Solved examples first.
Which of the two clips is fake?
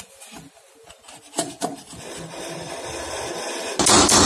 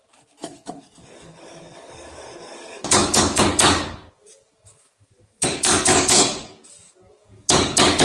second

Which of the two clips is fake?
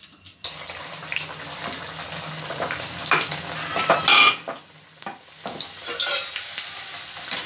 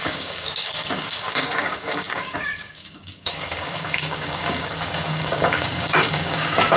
second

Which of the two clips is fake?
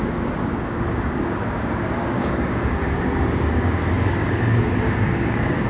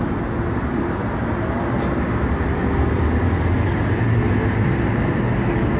first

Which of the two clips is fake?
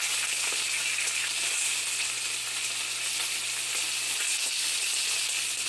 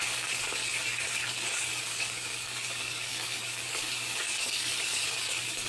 second